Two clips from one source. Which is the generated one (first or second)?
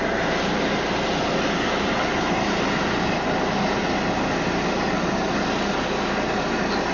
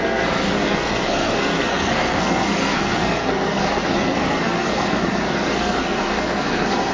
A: second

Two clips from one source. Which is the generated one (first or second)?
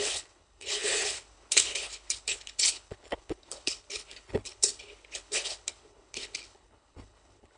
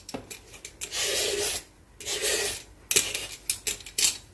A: first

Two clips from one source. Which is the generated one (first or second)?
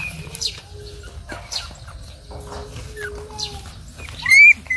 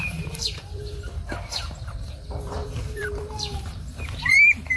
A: second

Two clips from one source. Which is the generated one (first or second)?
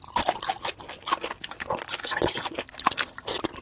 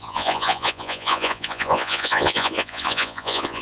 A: second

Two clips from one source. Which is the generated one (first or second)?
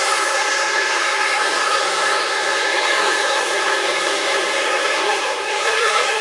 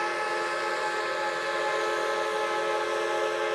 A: first